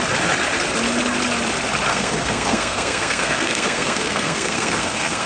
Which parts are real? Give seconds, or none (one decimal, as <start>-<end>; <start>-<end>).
0.0-1.9